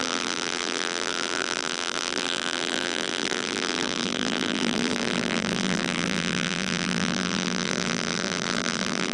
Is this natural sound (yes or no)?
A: no